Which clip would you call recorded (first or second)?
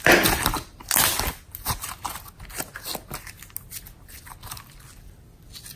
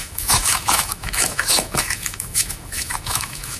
first